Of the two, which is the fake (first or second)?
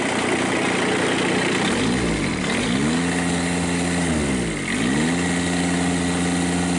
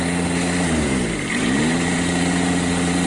second